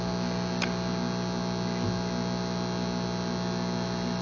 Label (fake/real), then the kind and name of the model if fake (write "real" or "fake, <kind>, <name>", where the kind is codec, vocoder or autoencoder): real